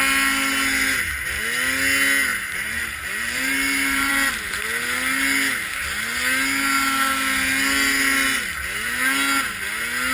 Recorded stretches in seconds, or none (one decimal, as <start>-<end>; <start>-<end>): 0.0-2.3; 4.1-10.1

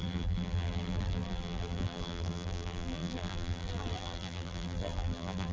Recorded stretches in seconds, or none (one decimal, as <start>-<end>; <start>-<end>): none